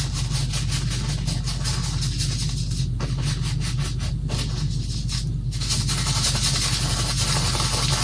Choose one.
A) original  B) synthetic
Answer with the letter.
A